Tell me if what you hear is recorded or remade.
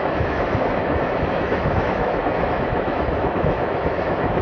remade